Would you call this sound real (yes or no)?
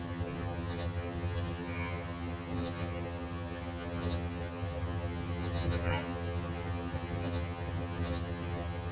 no